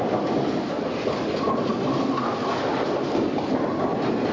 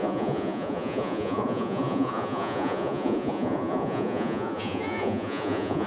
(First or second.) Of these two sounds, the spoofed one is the second